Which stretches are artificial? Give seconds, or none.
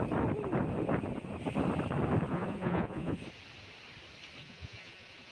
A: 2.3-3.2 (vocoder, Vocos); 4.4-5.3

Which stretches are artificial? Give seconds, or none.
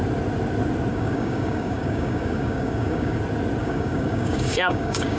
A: 0.9-3.2 (codec, DAC); 3.6-5.2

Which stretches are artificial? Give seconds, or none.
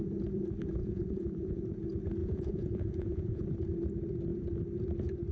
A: 0.8-1.6 (vocoder, Vocos); 2.2-3.4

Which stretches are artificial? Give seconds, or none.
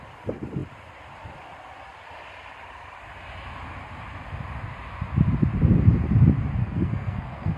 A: 6.6-7.6 (codec, SNAC)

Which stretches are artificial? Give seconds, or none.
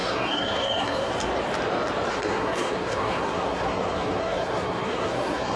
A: 0.0-1.1 (codec, SNAC); 2.1-5.6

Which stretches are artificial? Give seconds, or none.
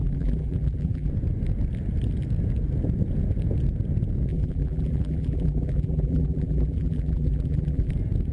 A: 0.0-1.1 (vocoder, BigVGAN v2); 4.3-7.9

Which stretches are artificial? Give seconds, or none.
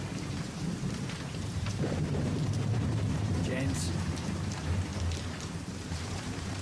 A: 0.0-4.9 (vocoder, BigVGAN v2); 5.7-6.6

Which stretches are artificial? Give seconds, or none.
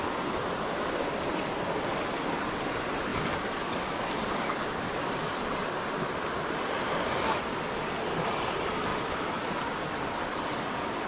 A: none